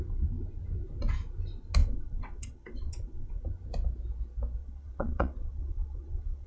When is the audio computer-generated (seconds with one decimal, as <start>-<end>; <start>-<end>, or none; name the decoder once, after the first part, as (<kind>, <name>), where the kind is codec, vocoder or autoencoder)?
1.8-3.5 (vocoder, WaveNeXt); 4.6-6.5